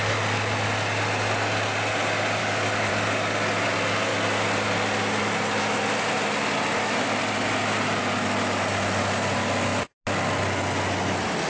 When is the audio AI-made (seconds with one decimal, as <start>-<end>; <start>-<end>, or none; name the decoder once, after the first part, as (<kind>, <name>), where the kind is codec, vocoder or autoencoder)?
2.4-2.9 (codec, DAC)